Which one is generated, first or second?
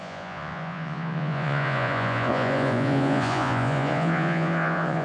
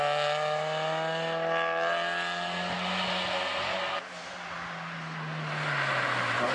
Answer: first